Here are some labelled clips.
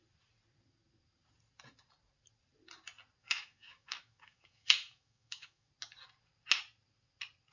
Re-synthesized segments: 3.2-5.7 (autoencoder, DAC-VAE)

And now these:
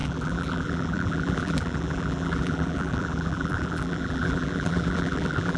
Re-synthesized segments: 0.0-5.6 (vocoder, BigVGAN v2)

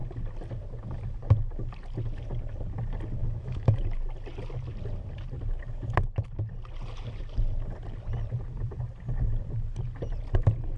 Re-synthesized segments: 3.2-3.8 (autoencoder, DAC-VAE)

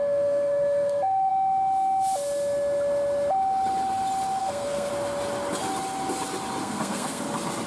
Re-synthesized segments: 0.0-1.3 (codec, SNAC); 4.4-4.9; 6.6-7.2

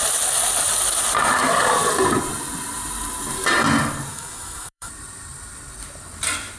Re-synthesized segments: 4.1-4.9 (autoencoder, DAC-VAE)

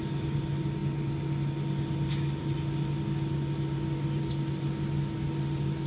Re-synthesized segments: none

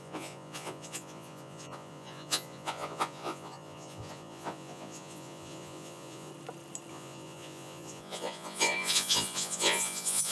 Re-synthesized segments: 0.0-6.3 (vocoder, Vocos); 6.9-10.3